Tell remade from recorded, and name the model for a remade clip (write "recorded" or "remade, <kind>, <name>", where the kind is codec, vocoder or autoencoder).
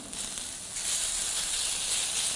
recorded